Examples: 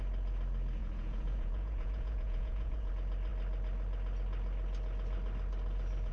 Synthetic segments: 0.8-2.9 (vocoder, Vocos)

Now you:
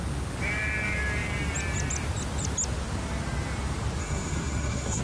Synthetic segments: 4.0-5.0 (codec, SNAC)